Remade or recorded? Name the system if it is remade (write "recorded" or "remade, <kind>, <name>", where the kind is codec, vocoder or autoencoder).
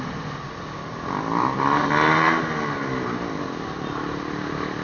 recorded